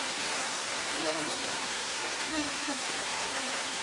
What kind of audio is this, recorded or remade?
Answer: remade